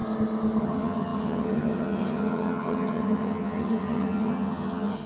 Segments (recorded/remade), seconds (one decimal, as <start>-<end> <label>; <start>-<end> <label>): 0.0-0.6 recorded; 0.6-5.1 remade